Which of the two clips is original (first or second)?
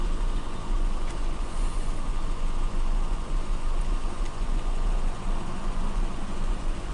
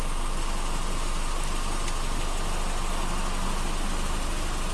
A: second